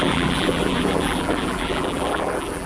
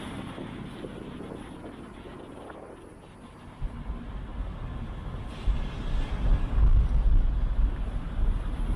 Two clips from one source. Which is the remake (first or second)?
first